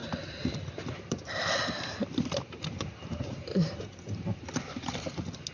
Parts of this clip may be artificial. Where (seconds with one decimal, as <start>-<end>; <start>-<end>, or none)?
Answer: 0.0-3.3